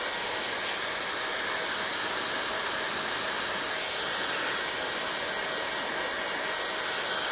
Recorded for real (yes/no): yes